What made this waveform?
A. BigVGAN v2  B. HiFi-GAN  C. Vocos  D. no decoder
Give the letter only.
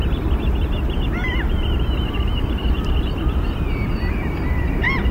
A